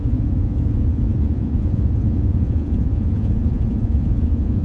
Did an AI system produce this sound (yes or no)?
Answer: yes